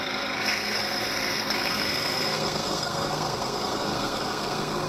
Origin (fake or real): fake